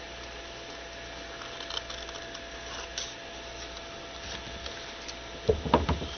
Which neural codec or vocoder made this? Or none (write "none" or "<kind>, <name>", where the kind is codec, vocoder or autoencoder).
none